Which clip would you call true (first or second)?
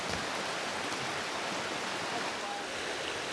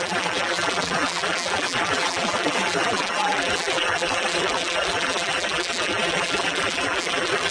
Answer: first